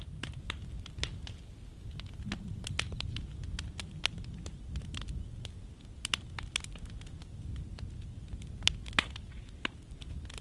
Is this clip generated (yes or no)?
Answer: no